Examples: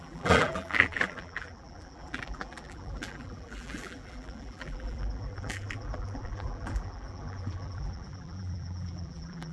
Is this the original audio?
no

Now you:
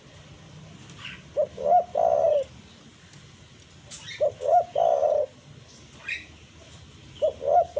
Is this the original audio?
yes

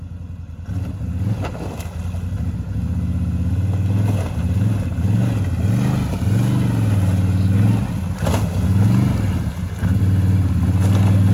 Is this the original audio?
yes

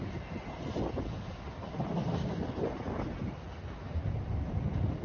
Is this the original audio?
yes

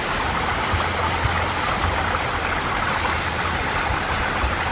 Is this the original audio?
yes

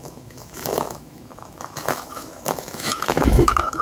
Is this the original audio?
no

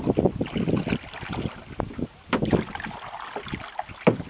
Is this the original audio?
yes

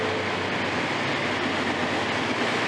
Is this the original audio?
yes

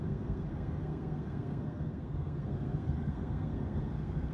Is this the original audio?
no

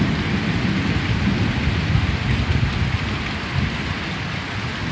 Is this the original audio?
yes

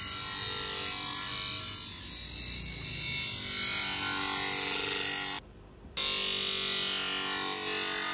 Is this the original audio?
yes